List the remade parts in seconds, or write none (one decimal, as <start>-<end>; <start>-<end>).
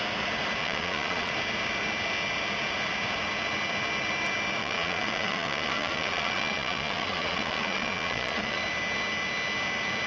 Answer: 0.6-1.3; 4.6-8.6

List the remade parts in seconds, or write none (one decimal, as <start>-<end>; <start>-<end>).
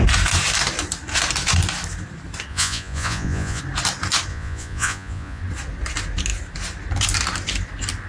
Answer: 2.5-3.6; 4.3-5.4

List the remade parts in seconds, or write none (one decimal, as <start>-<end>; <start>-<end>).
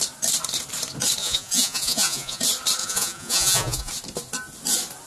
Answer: 1.2-2.4; 2.8-3.9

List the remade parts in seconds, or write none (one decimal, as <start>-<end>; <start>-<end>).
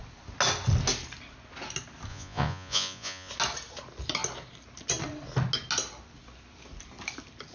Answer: 2.1-3.3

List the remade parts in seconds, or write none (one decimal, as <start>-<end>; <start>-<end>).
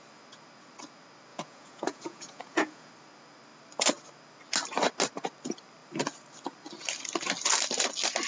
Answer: 1.3-2.9